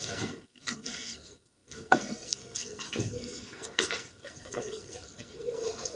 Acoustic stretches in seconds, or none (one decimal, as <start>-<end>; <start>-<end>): none